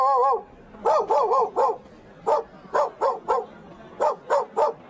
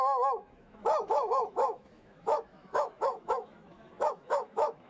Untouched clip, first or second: first